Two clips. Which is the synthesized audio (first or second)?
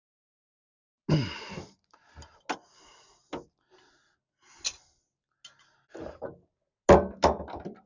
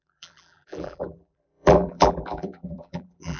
second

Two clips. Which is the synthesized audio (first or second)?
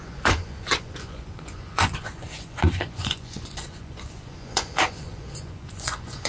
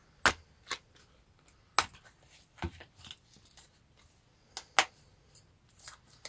first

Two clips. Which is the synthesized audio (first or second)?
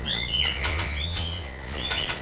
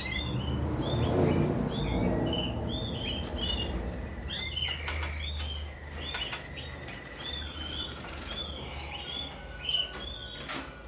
first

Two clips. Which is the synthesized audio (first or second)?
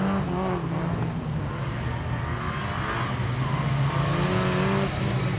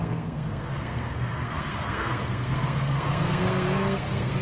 second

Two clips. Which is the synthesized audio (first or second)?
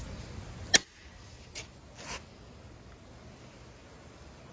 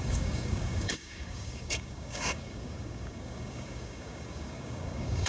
second